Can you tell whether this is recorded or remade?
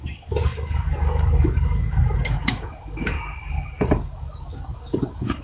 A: remade